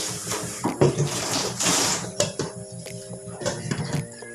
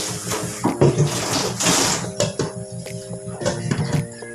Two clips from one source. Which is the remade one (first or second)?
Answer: first